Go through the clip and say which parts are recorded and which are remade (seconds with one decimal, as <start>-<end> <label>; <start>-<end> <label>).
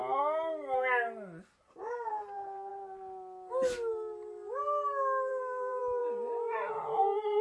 0.0-1.6 recorded; 1.6-2.7 remade; 2.7-5.3 recorded; 5.3-7.4 remade